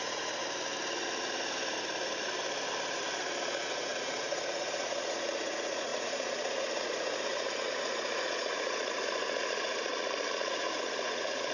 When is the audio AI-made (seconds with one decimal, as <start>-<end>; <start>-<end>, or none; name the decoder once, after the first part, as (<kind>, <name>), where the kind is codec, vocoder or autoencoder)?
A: 0.0-0.4 (vocoder, Vocos); 3.4-9.9; 10.5-11.5